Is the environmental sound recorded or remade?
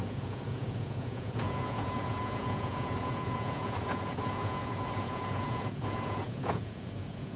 remade